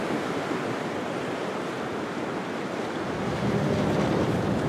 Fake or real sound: real